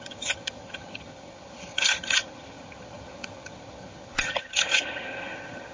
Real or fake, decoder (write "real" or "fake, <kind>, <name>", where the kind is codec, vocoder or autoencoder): fake, vocoder, HiFi-GAN